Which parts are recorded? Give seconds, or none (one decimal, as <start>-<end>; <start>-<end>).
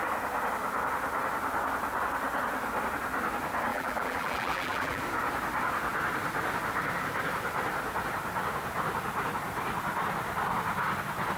0.0-3.7; 5.0-11.4